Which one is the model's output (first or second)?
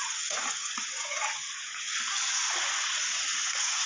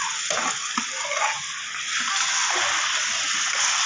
first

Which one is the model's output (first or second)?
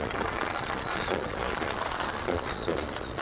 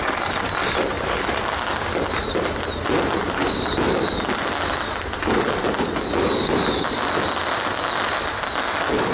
first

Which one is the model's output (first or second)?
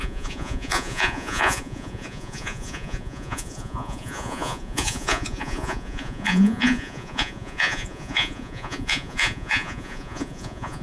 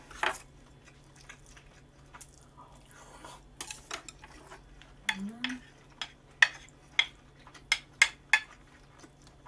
first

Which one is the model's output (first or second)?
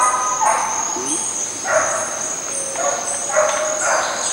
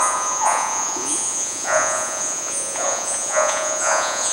second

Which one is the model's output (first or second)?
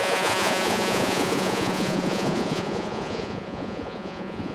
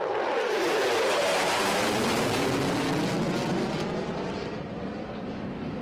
first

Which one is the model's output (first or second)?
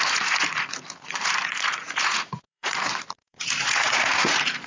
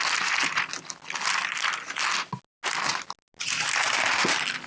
first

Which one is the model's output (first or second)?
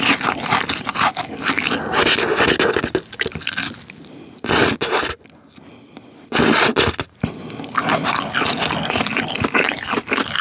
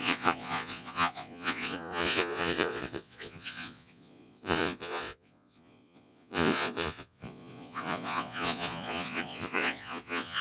second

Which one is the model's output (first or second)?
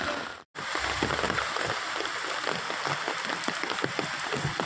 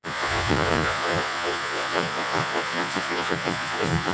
second